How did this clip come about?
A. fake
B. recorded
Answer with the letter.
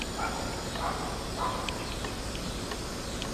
B